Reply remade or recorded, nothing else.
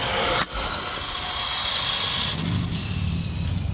recorded